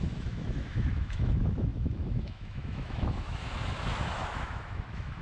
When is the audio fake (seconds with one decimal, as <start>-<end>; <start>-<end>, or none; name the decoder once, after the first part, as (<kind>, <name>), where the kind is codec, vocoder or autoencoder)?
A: 0.0-5.2 (autoencoder, DAC-VAE)